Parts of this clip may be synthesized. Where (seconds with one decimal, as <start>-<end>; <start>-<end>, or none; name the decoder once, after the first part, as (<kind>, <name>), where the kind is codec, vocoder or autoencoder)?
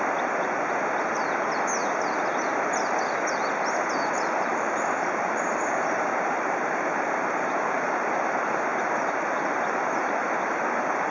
4.5-7.9 (vocoder, BigVGAN v2)